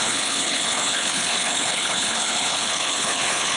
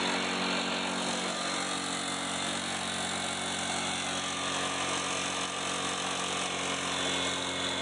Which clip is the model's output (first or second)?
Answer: first